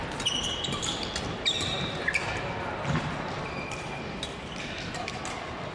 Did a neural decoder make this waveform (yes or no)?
no